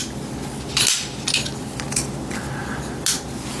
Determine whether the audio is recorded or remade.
recorded